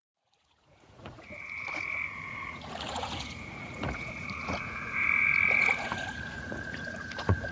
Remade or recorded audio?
remade